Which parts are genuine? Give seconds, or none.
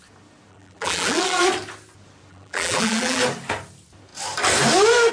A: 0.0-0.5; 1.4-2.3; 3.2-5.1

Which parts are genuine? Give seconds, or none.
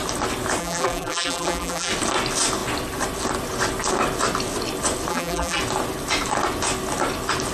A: 0.0-0.6; 1.9-5.1; 5.6-7.5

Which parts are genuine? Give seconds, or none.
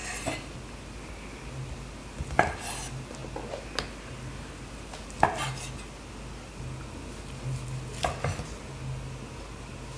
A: 0.0-10.0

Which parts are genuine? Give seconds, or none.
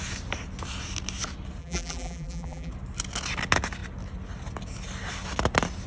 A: 0.0-1.6; 2.7-5.9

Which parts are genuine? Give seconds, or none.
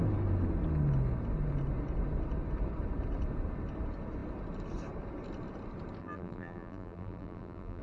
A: 0.0-6.0